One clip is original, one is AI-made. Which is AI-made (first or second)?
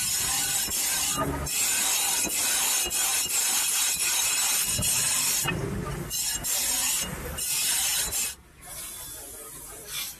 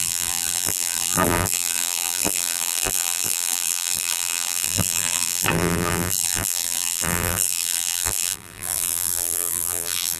second